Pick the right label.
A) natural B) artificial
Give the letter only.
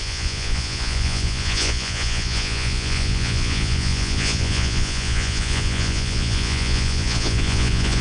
B